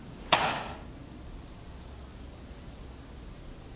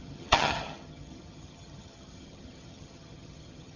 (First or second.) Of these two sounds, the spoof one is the second